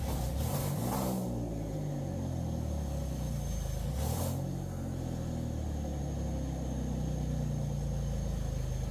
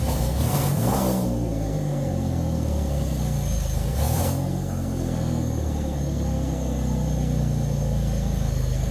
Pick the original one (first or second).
first